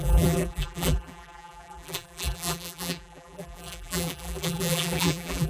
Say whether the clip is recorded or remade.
remade